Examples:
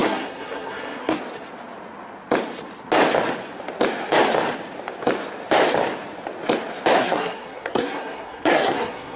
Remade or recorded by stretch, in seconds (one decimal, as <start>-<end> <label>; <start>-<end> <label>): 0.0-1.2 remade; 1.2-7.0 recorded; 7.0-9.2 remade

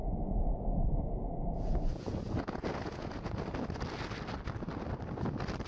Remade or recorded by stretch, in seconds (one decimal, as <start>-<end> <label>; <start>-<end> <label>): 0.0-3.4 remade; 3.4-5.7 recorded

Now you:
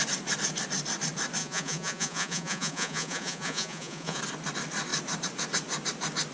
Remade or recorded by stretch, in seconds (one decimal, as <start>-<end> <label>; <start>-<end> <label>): 0.0-1.4 recorded; 1.4-4.2 remade; 4.2-6.3 recorded

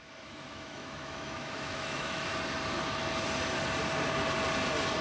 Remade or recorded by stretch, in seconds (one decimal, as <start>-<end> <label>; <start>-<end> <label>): 0.0-2.3 remade; 2.3-5.0 recorded

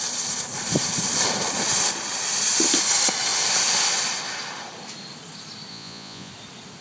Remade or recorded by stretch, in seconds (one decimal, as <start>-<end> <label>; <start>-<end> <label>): 0.0-5.7 recorded; 5.7-6.3 remade; 6.3-6.8 recorded

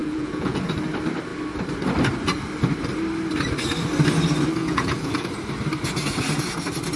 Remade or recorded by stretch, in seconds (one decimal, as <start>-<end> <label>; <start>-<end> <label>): 0.0-0.7 remade; 0.7-4.6 recorded; 4.6-5.3 remade; 5.3-7.0 recorded

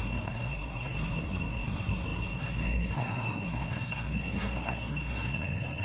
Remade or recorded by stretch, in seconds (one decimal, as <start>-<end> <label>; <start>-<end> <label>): 0.0-5.8 remade